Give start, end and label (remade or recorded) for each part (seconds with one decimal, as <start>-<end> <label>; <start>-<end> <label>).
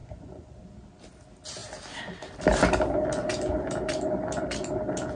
0.0-0.6 remade; 0.6-5.2 recorded